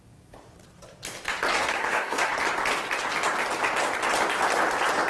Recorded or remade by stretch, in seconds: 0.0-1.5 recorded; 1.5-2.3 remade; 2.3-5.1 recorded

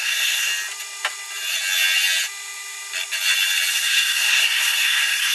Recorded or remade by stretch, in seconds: 0.0-0.5 remade; 0.5-3.7 recorded; 3.7-5.3 remade

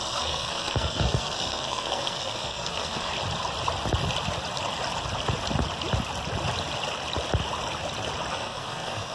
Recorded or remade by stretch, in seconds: 0.0-3.1 remade; 3.1-8.3 recorded; 8.3-9.1 remade